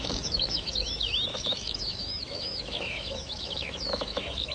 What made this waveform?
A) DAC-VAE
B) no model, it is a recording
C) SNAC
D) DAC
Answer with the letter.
A